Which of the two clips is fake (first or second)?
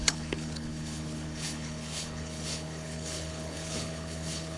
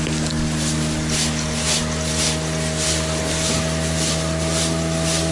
first